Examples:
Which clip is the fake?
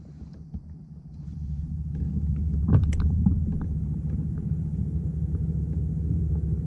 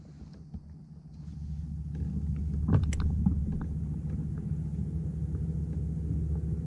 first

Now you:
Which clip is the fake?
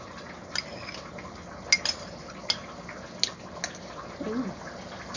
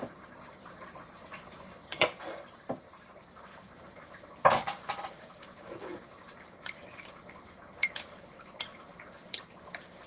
second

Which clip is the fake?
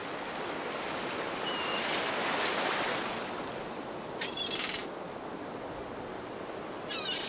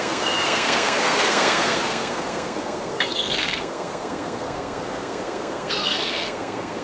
second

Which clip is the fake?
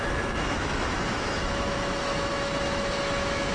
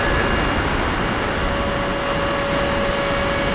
first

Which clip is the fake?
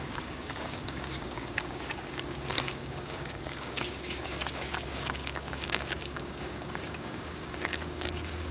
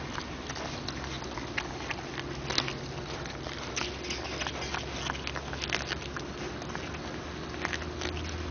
first